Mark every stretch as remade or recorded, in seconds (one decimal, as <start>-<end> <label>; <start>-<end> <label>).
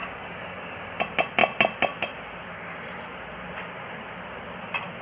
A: 0.0-1.0 remade; 1.0-5.0 recorded